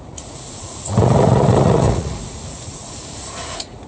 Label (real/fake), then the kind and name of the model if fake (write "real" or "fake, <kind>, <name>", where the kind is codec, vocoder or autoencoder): fake, vocoder, Vocos